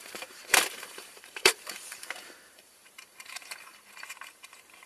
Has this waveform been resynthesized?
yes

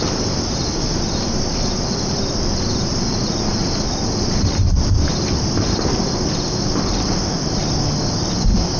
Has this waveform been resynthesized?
yes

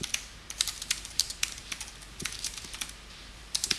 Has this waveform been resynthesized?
yes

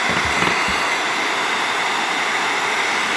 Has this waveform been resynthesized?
no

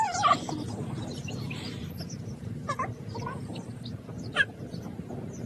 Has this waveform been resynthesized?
yes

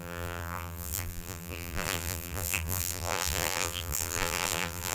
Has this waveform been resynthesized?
yes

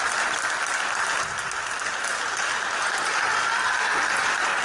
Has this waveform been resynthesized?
no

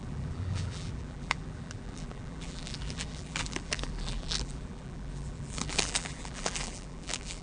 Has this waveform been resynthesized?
yes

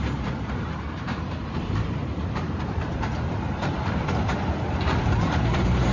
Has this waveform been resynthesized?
yes